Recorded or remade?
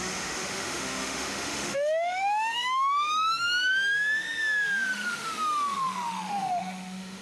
remade